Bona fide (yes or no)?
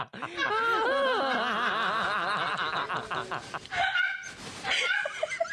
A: yes